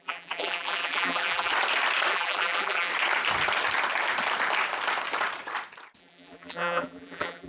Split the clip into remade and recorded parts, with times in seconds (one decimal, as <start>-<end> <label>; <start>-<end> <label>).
0.0-1.5 remade; 1.5-2.1 recorded; 2.1-2.9 remade; 2.9-6.0 recorded; 6.0-7.5 remade